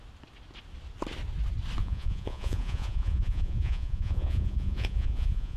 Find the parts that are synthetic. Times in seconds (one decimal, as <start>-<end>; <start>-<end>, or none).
1.8-5.6